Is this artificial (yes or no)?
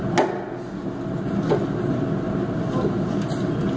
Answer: no